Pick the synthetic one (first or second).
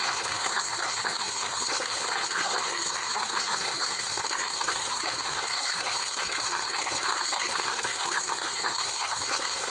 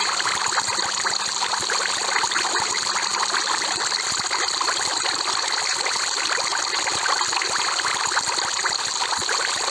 first